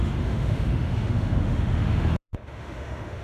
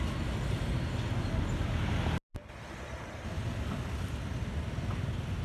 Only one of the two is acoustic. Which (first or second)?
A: second